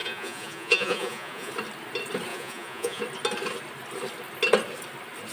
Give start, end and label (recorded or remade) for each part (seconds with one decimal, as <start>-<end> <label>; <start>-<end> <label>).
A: 0.0-1.5 remade; 1.5-2.3 recorded; 2.3-3.0 remade; 3.0-5.3 recorded

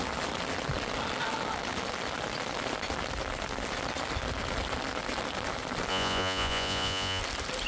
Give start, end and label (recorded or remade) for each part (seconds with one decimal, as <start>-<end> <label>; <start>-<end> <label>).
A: 0.0-5.9 recorded; 5.9-7.2 remade; 7.2-7.7 recorded

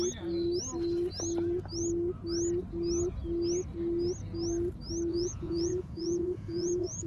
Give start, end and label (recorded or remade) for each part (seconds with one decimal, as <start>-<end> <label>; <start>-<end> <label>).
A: 0.0-5.1 recorded; 5.1-7.1 remade

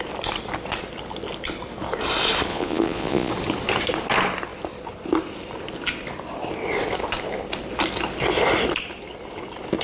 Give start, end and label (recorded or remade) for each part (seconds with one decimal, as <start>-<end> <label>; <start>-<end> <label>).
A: 0.0-2.5 recorded; 2.5-3.3 remade; 3.3-9.8 recorded